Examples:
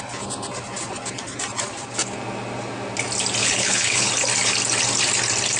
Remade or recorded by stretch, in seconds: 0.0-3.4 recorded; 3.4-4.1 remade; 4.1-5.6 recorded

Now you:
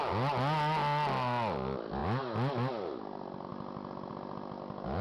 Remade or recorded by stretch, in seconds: 0.0-5.0 recorded

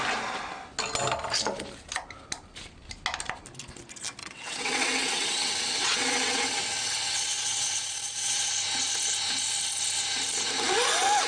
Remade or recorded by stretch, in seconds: 0.0-4.2 recorded; 4.2-8.5 remade; 8.5-11.3 recorded

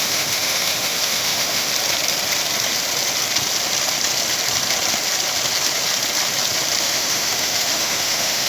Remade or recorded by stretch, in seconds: 0.0-1.7 remade; 1.7-6.8 recorded; 6.8-8.5 remade

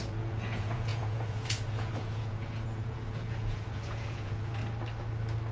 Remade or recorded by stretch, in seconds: 0.0-4.6 remade; 4.6-5.5 recorded

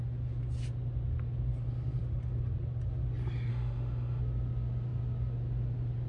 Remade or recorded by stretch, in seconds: 0.0-3.5 recorded; 3.5-4.2 remade; 4.2-6.1 recorded

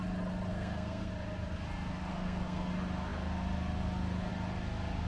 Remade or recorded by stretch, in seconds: 0.0-0.5 recorded; 0.5-1.1 remade; 1.1-2.1 recorded; 2.1-2.7 remade; 2.7-5.1 recorded

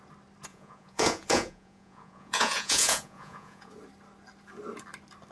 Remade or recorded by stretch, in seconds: 0.0-0.5 recorded; 0.5-3.7 remade; 3.7-5.3 recorded